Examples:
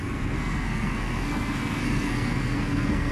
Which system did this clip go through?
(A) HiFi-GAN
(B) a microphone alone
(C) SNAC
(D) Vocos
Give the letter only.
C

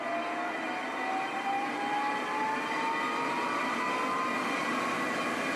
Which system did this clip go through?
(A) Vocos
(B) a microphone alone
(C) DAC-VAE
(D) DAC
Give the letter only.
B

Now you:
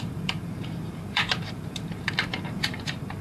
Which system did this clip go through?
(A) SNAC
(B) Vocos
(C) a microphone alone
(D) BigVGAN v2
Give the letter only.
D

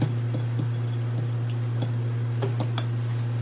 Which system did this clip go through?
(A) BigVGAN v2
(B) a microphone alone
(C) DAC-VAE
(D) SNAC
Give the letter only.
B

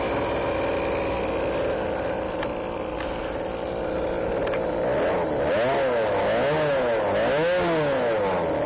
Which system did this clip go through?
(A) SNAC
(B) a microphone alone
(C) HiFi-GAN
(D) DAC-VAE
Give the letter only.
B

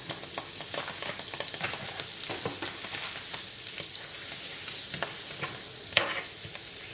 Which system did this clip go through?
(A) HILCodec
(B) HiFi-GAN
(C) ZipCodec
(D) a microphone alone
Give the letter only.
D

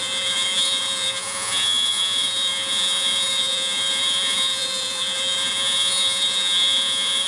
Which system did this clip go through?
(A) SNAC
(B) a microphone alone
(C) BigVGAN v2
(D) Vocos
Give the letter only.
D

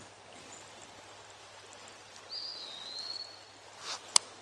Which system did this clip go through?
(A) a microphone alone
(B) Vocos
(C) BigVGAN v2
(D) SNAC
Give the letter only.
A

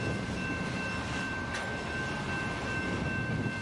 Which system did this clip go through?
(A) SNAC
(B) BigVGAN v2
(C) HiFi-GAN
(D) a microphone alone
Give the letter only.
D